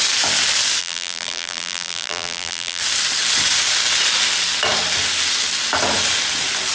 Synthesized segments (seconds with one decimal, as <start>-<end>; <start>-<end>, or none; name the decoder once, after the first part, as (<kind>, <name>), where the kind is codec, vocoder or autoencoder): 0.8-2.8 (vocoder, BigVGAN v2)